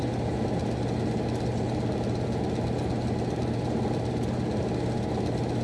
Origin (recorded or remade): recorded